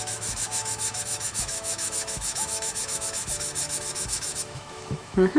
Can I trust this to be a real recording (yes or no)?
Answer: no